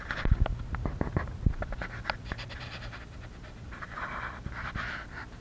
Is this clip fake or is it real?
fake